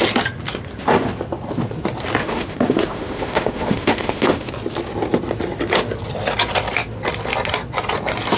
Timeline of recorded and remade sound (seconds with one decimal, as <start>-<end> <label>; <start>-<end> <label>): 0.0-2.2 recorded; 2.2-4.5 remade; 4.5-8.4 recorded

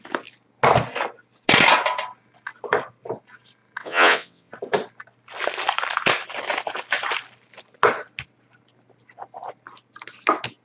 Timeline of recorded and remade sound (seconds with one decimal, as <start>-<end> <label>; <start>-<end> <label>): 0.0-3.8 recorded; 3.8-4.5 remade; 4.5-10.6 recorded

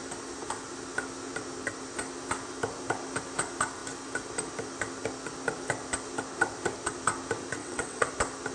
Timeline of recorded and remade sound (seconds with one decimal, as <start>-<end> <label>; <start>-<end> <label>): 0.0-7.6 recorded; 7.6-8.1 remade; 8.1-8.5 recorded